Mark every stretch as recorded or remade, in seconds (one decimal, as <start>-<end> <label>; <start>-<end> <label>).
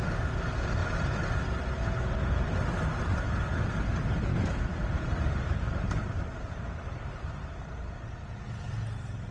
0.0-0.8 recorded; 0.8-1.6 remade; 1.6-3.5 recorded; 3.5-7.7 remade; 7.7-9.3 recorded